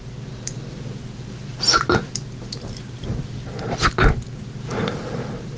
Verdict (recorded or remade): recorded